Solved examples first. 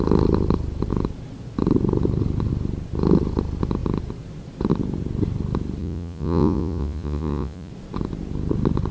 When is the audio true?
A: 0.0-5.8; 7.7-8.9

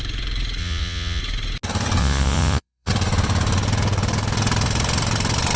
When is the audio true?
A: 0.0-0.6; 1.2-2.0; 2.9-5.6

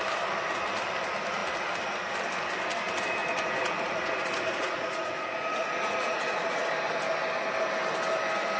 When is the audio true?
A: 0.0-3.2; 6.7-8.6

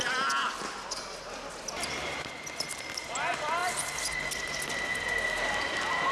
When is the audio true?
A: 0.0-6.1

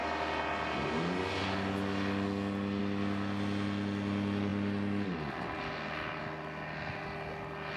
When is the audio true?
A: 0.0-7.8

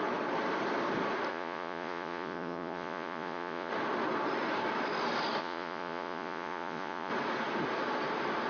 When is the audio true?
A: 0.0-1.3; 3.7-5.4; 7.1-8.5

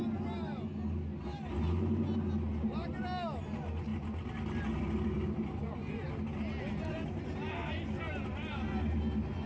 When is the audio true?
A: 0.0-9.5

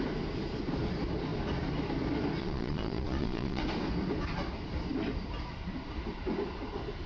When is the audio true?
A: 0.0-2.4; 3.6-7.1